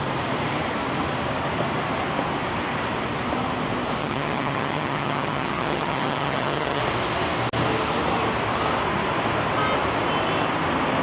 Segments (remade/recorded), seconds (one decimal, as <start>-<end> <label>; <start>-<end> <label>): 0.0-4.0 recorded; 4.0-6.8 remade; 6.8-11.0 recorded